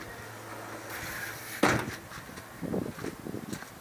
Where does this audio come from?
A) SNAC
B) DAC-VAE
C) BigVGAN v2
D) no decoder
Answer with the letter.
D